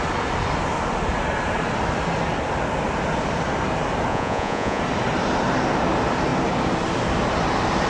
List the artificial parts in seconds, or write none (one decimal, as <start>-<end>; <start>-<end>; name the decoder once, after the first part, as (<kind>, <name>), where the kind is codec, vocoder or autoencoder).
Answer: 4.1-4.8 (vocoder, Vocos)